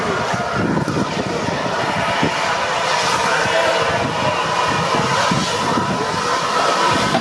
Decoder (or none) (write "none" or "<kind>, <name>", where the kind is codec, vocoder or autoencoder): none